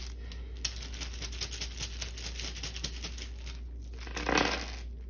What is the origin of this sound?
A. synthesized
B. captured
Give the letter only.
B